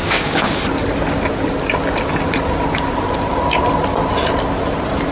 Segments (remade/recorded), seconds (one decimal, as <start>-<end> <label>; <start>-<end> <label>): 0.0-0.6 remade; 0.6-5.1 recorded